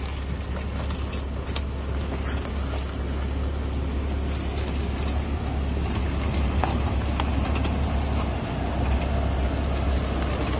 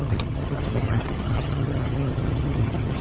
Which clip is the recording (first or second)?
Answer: first